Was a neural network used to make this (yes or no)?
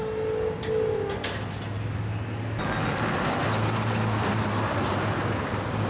no